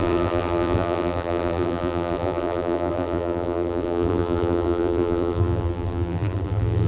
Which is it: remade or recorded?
remade